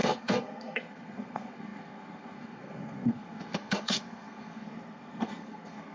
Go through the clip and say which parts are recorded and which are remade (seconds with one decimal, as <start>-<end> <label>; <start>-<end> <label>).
0.0-5.9 remade